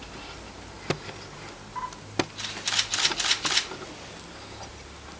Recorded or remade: recorded